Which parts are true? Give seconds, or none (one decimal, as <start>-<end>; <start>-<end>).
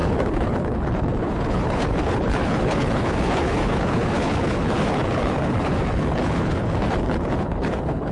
none